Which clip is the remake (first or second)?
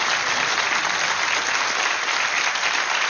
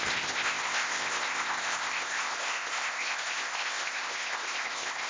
second